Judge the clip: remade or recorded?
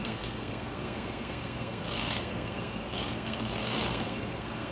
remade